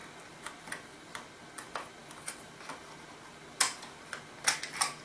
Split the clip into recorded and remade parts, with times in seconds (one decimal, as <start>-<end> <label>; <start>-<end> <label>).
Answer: 0.0-5.0 recorded